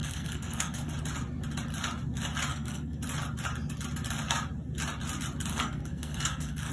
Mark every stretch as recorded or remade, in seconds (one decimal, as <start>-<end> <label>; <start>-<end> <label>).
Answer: 0.0-0.9 remade; 0.9-2.5 recorded; 2.5-3.0 remade; 3.0-5.5 recorded; 5.5-6.7 remade